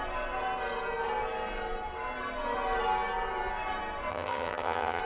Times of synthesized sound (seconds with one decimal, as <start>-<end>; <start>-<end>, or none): 4.1-5.0